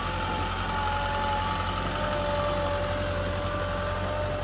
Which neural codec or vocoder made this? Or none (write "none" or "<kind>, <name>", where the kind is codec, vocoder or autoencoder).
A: none